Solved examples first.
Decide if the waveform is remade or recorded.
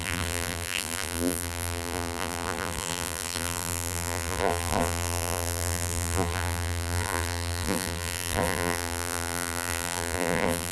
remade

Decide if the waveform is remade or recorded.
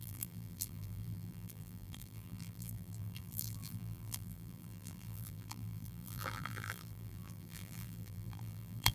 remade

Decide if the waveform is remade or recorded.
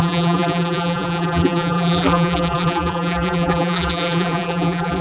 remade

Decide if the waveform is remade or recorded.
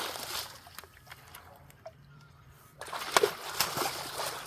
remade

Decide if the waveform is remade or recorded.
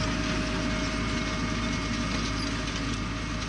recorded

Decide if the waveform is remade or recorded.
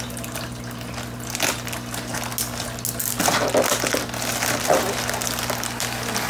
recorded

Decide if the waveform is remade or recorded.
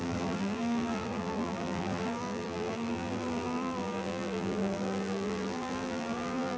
remade